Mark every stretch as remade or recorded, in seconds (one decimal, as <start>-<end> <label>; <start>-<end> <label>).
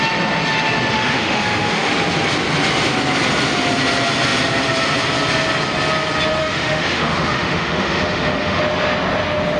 0.0-0.9 recorded; 0.9-1.9 remade; 1.9-6.4 recorded; 6.4-8.6 remade; 8.6-9.6 recorded